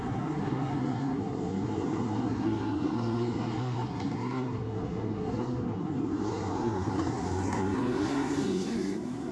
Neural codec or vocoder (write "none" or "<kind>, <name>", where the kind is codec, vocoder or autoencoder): codec, SNAC